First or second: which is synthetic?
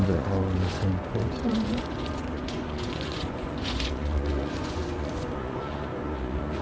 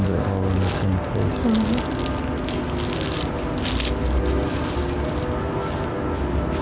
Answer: first